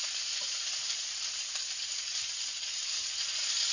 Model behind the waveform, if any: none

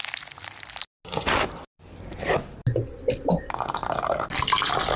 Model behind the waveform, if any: none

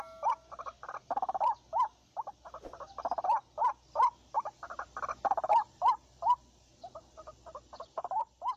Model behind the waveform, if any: none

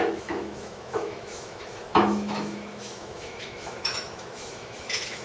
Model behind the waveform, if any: autoencoder, DAC-VAE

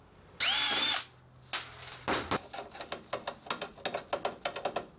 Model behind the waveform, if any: none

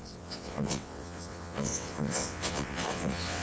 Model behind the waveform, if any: vocoder, WaveNeXt